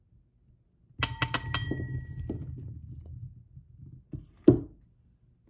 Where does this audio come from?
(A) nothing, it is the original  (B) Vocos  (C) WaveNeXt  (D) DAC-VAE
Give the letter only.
A